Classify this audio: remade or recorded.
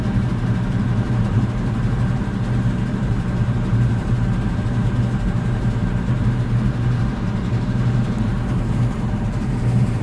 remade